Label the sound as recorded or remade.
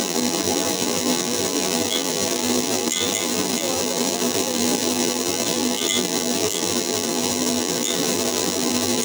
remade